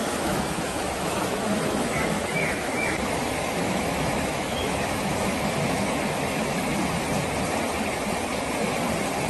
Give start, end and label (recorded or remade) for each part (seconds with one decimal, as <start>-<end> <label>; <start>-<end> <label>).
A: 0.0-6.5 remade; 6.5-9.3 recorded